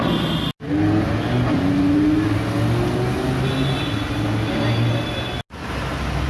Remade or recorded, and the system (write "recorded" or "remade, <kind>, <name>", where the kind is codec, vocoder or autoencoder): recorded